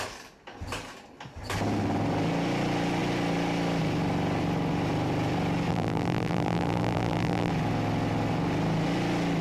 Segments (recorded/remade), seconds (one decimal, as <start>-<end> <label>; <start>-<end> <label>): 0.0-5.7 recorded; 5.7-7.5 remade; 7.5-9.4 recorded